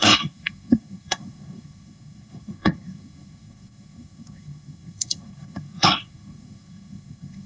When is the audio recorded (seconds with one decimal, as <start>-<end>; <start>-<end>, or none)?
none